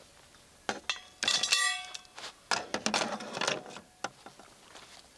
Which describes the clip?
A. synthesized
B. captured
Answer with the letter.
B